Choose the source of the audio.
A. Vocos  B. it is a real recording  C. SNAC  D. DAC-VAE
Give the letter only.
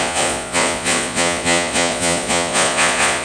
A